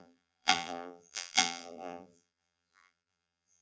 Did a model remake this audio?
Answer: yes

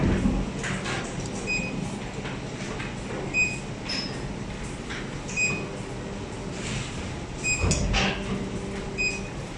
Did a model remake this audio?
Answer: no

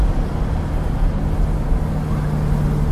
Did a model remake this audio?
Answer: no